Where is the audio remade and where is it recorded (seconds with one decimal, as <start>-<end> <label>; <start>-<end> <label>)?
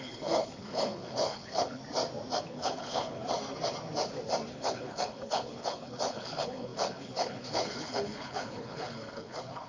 0.0-1.8 remade; 1.8-2.4 recorded; 2.4-3.2 remade; 3.2-4.5 recorded; 4.5-9.7 remade